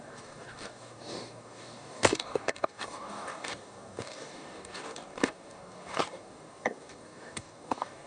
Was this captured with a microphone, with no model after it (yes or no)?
no